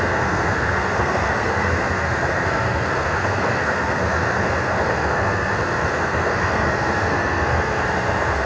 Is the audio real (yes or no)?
no